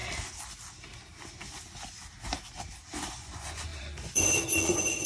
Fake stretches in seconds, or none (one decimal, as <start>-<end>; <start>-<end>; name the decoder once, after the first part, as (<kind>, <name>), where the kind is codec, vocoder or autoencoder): 3.1-5.1 (vocoder, Vocos)

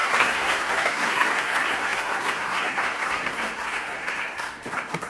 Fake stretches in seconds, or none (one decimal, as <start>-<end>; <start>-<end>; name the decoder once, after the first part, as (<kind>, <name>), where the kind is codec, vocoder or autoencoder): 0.0-5.1 (codec, SNAC)